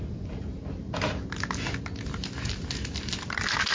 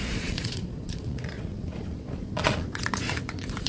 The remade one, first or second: second